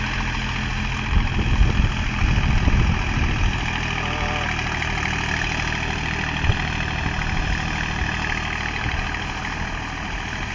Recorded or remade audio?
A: recorded